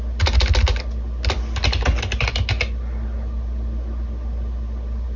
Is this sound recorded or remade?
recorded